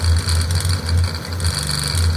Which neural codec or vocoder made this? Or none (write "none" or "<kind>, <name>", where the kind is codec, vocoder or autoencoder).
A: none